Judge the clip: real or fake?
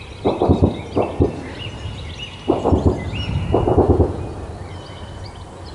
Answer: real